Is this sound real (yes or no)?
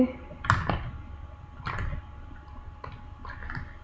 yes